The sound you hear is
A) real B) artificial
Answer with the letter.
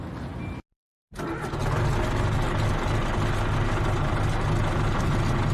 A